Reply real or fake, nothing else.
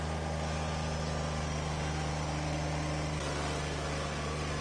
real